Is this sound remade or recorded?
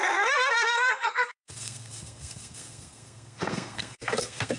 remade